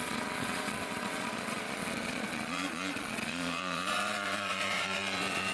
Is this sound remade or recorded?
remade